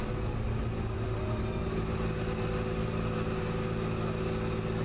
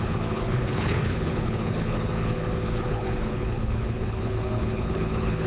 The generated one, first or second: second